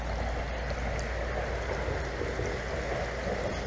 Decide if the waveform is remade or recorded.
recorded